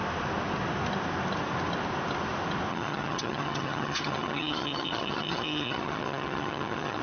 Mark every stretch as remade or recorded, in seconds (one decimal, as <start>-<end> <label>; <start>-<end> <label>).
0.0-2.7 recorded; 2.7-7.0 remade